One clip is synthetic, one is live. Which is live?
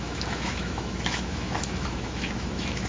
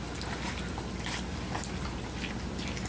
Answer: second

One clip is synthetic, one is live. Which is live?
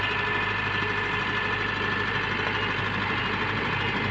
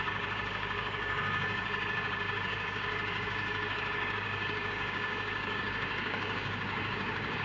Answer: first